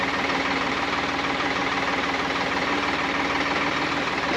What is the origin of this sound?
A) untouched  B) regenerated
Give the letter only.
B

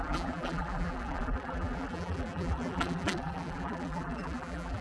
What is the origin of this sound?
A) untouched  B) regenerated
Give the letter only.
B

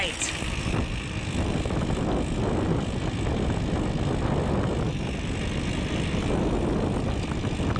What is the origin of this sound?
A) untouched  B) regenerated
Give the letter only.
A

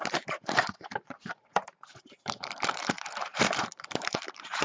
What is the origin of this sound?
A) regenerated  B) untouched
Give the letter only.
A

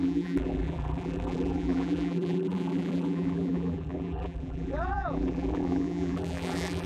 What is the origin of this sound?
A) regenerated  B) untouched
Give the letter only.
A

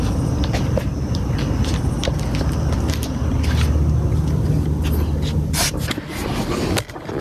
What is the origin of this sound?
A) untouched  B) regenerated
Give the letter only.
A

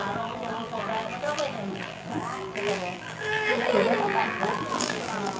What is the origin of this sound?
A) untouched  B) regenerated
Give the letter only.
B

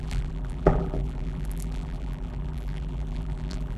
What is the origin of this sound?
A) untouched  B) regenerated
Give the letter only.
B